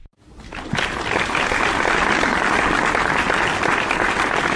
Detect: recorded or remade recorded